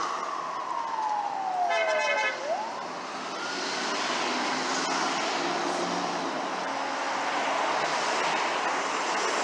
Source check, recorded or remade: recorded